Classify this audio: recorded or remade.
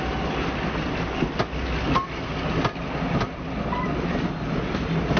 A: recorded